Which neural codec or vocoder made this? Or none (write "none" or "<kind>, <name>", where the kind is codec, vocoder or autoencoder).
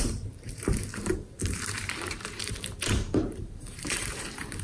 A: vocoder, BigVGAN v2